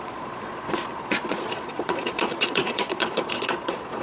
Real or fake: fake